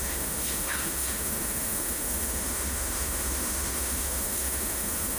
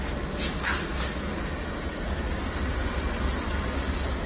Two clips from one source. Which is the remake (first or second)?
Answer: first